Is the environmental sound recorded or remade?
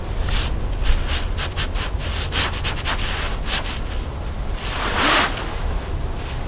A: recorded